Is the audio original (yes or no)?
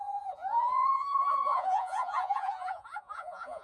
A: no